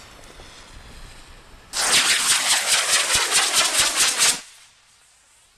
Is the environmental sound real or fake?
real